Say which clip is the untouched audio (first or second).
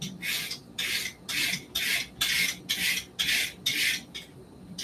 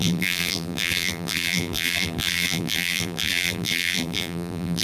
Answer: first